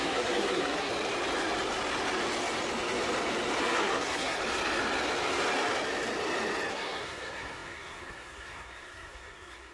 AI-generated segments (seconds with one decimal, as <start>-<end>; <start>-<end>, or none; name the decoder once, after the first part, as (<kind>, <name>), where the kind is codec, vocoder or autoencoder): 0.0-0.9 (codec, SNAC); 3.6-4.4; 6.7-9.7